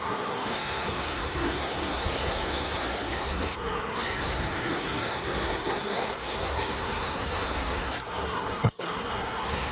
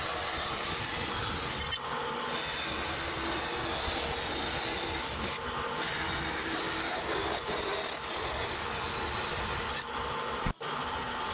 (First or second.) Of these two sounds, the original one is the second